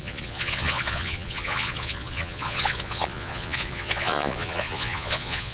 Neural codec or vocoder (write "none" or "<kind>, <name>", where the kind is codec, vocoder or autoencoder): vocoder, Vocos